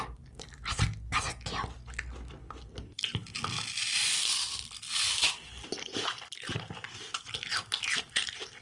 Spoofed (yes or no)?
no